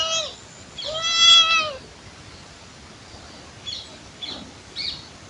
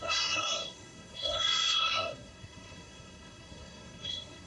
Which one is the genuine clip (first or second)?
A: first